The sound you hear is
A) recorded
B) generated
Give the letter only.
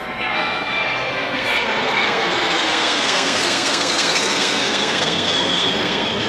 B